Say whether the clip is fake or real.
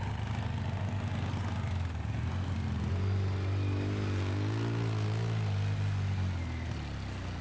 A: real